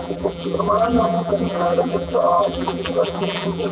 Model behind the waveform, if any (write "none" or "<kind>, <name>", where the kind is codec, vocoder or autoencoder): vocoder, BigVGAN v2